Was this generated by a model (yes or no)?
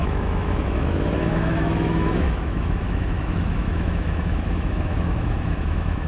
yes